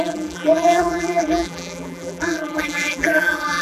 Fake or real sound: fake